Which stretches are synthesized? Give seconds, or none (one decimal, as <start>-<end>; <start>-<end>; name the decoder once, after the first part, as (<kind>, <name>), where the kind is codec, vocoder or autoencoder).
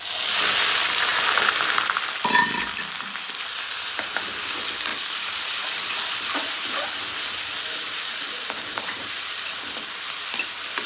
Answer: 1.1-2.0 (vocoder, BigVGAN v2); 4.9-9.5